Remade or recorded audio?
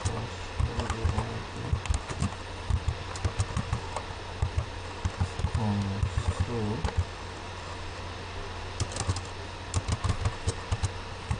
recorded